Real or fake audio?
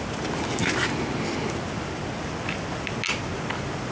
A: real